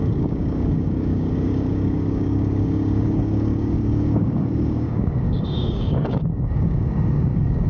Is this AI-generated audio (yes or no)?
yes